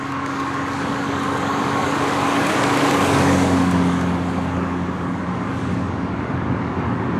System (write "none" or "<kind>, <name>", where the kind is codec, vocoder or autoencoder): codec, DAC